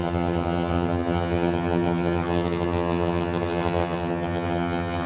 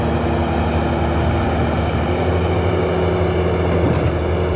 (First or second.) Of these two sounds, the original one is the second